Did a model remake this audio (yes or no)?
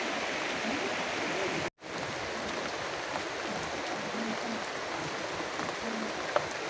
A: no